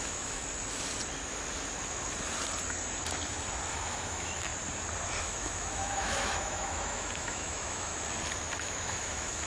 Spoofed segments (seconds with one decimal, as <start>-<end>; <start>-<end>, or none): 0.0-0.4; 3.9-4.5; 5.2-7.9; 8.6-9.5